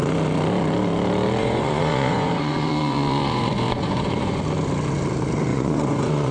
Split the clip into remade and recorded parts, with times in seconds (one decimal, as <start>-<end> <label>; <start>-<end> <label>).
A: 0.0-1.4 recorded; 1.4-4.4 remade; 4.4-5.5 recorded; 5.5-6.3 remade